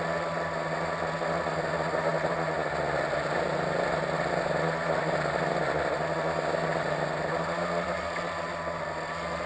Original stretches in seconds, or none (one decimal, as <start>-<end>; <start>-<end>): 0.0-9.5